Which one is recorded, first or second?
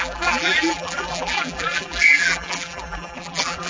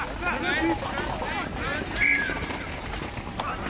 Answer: second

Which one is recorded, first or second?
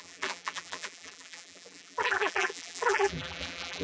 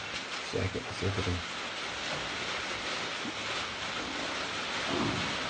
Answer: second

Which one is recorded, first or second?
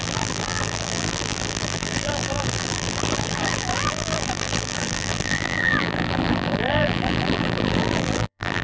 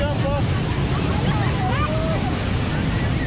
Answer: second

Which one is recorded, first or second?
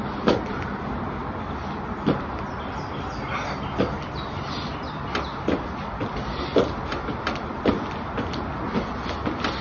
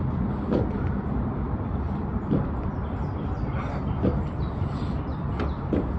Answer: first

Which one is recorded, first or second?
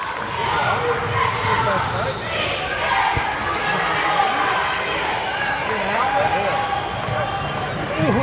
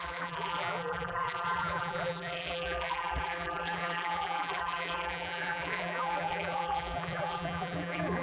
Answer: first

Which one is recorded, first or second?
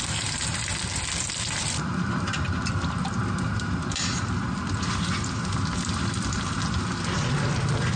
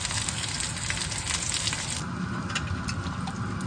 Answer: second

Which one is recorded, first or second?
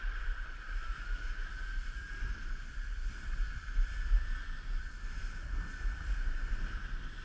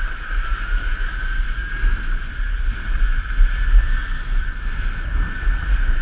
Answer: second